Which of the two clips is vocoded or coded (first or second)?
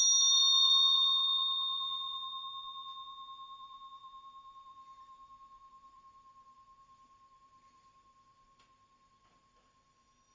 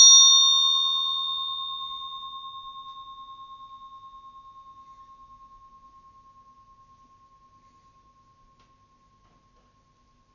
first